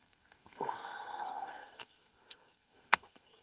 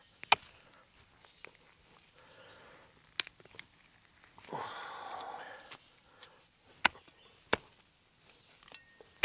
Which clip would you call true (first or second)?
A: second